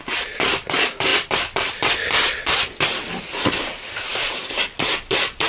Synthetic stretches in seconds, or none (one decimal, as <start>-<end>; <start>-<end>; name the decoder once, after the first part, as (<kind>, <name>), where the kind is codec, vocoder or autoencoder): none

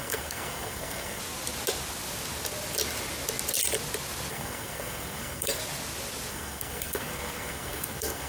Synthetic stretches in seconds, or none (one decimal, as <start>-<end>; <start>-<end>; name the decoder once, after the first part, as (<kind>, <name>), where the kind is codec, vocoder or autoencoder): 0.0-1.2 (codec, SNAC); 4.3-5.6; 6.3-8.3

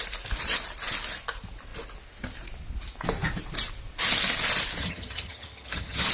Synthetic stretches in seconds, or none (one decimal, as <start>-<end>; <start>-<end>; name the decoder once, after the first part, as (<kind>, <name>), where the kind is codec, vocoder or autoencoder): 4.8-6.1 (vocoder, HiFi-GAN)

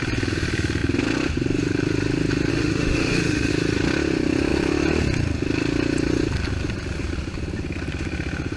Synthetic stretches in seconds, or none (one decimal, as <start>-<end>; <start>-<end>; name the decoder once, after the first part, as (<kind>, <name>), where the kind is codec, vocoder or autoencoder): 2.5-3.5 (autoencoder, DAC-VAE)

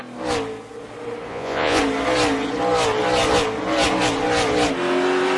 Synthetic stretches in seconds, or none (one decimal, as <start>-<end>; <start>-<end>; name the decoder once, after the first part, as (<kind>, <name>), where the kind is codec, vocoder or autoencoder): 1.3-1.8 (vocoder, Vocos)

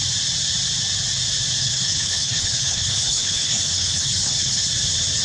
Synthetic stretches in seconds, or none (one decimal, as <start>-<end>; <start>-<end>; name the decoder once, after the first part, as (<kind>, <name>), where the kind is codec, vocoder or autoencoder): 1.6-4.7 (codec, HILCodec)